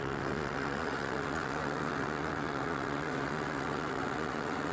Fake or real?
fake